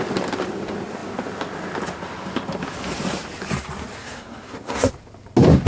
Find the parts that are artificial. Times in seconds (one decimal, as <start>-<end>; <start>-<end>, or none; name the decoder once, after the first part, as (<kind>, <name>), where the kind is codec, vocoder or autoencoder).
4.0-4.9 (codec, SNAC)